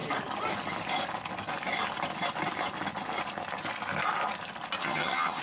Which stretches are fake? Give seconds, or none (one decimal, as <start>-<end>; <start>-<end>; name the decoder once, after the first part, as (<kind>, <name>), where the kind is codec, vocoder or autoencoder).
4.8-5.4 (vocoder, HiFi-GAN)